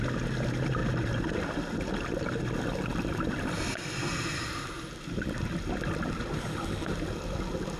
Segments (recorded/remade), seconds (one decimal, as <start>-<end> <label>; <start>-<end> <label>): 0.0-7.8 recorded